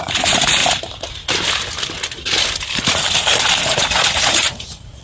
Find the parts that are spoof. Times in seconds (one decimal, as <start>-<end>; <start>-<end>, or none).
0.0-0.6; 3.6-5.0